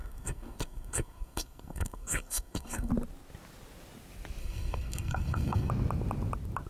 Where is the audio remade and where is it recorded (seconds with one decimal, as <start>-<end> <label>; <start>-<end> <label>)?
0.0-2.9 remade; 2.9-4.4 recorded; 4.4-5.7 remade; 5.7-6.7 recorded